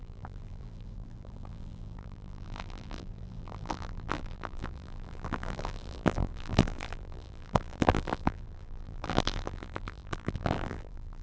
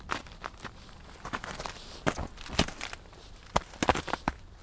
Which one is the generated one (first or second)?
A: first